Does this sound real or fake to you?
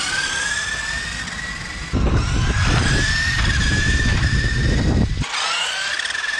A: real